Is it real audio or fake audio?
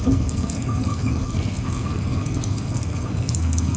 fake